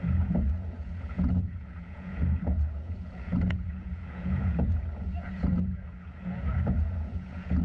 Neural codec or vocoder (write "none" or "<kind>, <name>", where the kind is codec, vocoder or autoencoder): vocoder, Vocos